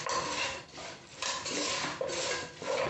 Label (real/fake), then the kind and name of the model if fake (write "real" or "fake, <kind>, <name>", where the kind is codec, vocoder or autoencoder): real